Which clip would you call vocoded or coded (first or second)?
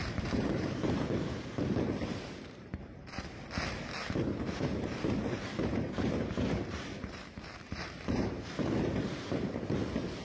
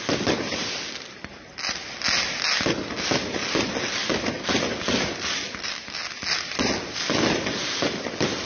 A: first